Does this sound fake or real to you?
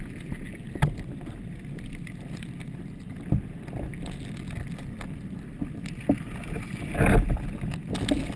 real